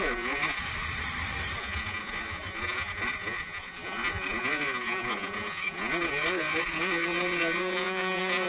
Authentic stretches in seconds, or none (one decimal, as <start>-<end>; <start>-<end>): 0.6-1.6